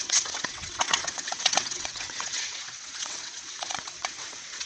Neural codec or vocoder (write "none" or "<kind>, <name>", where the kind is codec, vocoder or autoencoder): vocoder, WaveNeXt